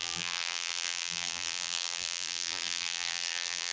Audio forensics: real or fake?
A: fake